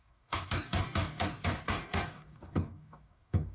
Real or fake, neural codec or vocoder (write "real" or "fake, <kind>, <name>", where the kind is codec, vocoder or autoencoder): fake, codec, DAC